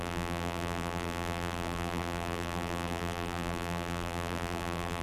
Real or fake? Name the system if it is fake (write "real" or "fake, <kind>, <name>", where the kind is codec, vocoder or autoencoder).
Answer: fake, vocoder, BigVGAN v2